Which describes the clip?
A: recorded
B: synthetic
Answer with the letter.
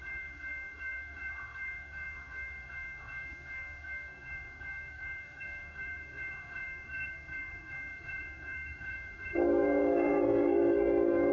B